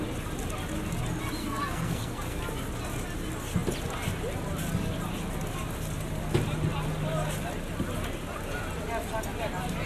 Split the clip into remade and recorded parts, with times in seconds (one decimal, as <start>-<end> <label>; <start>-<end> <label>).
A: 0.0-1.4 recorded; 1.4-2.4 remade; 2.4-9.9 recorded